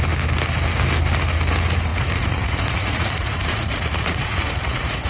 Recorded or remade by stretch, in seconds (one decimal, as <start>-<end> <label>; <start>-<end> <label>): 0.0-1.9 recorded; 1.9-5.1 remade